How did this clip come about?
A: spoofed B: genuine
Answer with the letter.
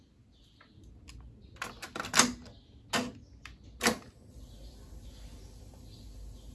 B